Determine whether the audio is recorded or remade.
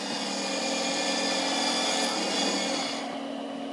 recorded